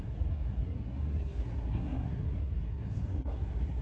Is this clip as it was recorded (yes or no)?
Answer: no